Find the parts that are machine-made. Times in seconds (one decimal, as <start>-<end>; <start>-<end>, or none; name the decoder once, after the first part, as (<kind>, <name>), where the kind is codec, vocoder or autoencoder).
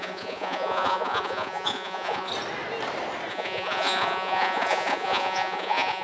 0.0-2.3 (vocoder, Vocos); 3.3-6.0